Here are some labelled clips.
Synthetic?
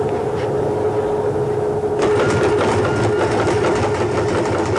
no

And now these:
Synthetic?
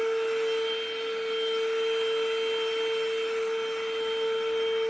no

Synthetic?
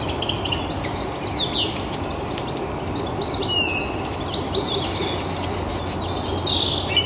no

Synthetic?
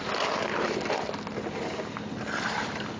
no